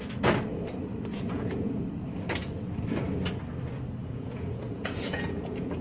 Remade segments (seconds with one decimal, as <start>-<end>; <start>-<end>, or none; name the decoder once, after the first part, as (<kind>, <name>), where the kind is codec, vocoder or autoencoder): 1.1-1.8 (vocoder, Vocos); 4.0-5.8